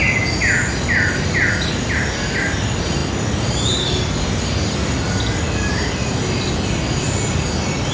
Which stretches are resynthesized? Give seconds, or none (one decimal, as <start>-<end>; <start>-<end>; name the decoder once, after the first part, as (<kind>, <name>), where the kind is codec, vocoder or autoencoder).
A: none